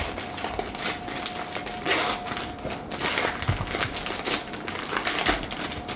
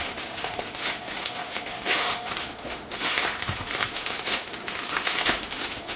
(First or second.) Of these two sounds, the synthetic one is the second